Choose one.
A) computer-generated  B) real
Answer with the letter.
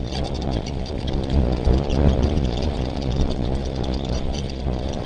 A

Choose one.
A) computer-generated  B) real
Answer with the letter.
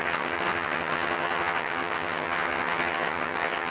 A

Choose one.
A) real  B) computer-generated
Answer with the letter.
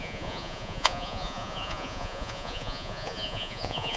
B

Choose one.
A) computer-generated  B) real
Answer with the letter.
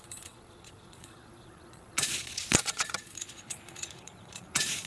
A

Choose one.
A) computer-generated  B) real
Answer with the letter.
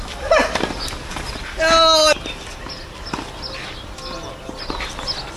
B